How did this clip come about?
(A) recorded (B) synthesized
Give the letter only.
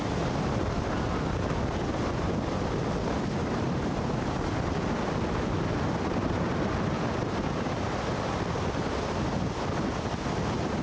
A